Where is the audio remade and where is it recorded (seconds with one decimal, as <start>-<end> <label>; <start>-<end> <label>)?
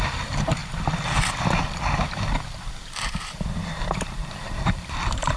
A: 0.0-0.6 remade; 0.6-3.8 recorded; 3.8-5.4 remade